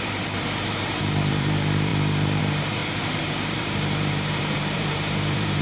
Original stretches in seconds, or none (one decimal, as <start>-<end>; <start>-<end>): none